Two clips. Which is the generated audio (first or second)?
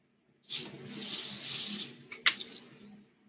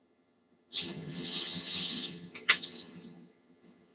second